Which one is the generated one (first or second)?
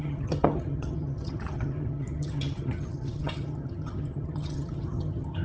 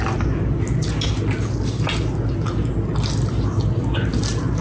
first